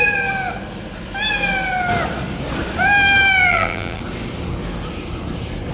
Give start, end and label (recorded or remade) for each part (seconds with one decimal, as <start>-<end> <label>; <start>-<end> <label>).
0.0-3.5 recorded; 3.5-4.0 remade; 4.0-5.7 recorded